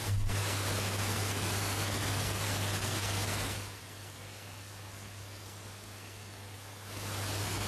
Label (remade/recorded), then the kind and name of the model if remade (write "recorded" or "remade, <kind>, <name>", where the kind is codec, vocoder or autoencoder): remade, codec, SNAC